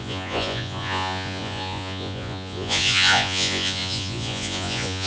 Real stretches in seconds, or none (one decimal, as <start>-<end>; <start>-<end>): none